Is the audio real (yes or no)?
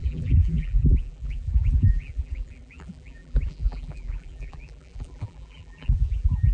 no